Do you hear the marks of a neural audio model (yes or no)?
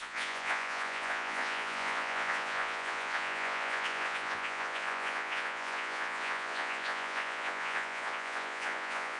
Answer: yes